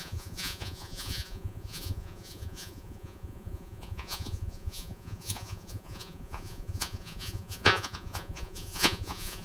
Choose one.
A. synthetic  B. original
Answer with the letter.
A